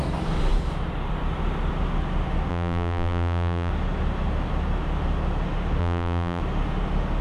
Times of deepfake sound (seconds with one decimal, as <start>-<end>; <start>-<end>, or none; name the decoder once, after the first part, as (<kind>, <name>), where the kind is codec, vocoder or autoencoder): 2.5-3.7 (vocoder, BigVGAN v2); 5.8-6.4